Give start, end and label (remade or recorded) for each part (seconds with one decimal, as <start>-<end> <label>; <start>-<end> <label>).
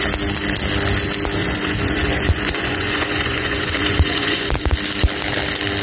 0.0-1.4 recorded; 1.4-4.5 remade; 4.5-5.8 recorded